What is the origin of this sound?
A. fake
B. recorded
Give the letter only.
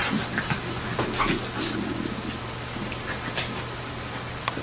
B